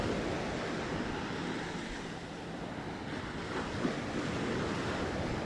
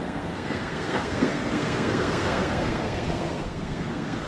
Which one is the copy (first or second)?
second